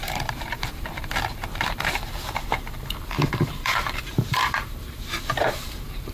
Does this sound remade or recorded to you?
remade